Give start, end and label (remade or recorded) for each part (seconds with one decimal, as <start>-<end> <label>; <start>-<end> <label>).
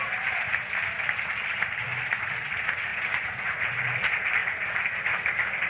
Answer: 0.0-2.9 recorded; 2.9-3.8 remade; 3.8-5.7 recorded